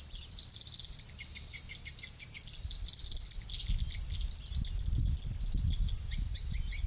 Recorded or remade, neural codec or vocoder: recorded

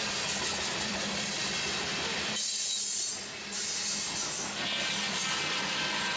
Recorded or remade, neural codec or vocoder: recorded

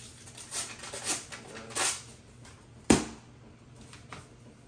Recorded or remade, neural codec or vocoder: recorded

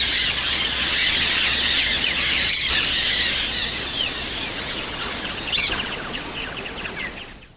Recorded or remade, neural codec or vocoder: remade, vocoder, Vocos